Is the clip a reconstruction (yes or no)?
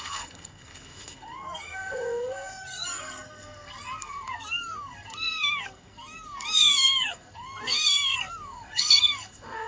yes